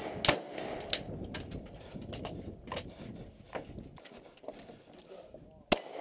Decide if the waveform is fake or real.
real